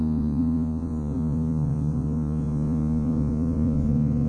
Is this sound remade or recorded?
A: remade